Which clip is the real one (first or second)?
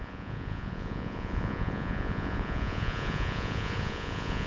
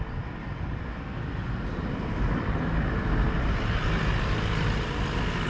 second